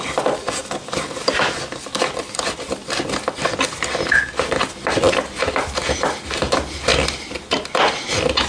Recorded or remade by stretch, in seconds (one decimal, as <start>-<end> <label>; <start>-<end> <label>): 0.0-8.5 recorded

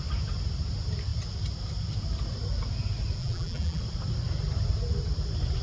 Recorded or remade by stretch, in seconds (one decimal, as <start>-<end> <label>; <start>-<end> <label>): 0.0-3.2 recorded; 3.2-3.8 remade; 3.8-5.6 recorded

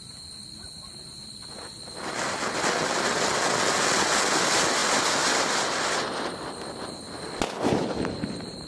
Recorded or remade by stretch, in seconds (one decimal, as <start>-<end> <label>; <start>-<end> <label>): 0.0-8.7 recorded

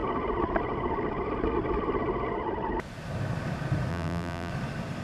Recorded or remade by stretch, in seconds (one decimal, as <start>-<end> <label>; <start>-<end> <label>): 0.0-3.9 recorded; 3.9-4.5 remade; 4.5-5.0 recorded

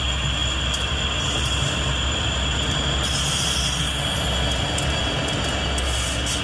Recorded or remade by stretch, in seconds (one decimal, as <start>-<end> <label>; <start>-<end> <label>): 0.0-6.4 recorded

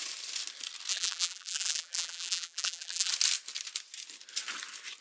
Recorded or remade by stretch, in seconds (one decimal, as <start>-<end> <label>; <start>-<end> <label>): 0.0-0.9 recorded; 0.9-3.1 remade; 3.1-5.0 recorded

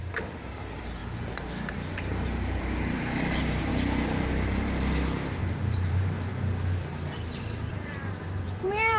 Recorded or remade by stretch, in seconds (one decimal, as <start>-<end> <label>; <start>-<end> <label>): 0.0-1.0 remade; 1.0-1.7 recorded; 1.7-3.7 remade; 3.7-5.4 recorded; 5.4-6.3 remade; 6.3-7.7 recorded; 7.7-9.0 remade

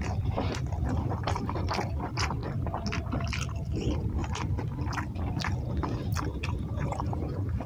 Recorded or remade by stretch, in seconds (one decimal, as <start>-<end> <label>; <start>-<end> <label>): 0.0-2.4 remade; 2.4-3.5 recorded; 3.5-4.2 remade; 4.2-6.2 recorded; 6.2-7.7 remade